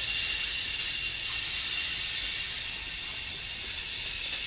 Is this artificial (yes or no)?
no